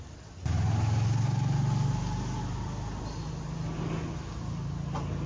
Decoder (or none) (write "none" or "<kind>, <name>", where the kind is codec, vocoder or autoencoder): none